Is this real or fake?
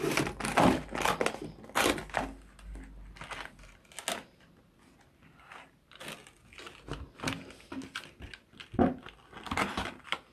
real